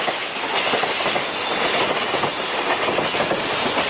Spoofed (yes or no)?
no